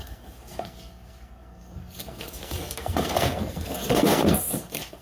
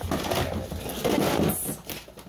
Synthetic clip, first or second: first